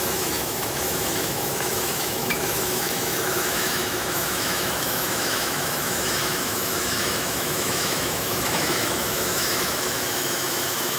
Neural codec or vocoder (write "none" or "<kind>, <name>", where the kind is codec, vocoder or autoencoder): autoencoder, DAC-VAE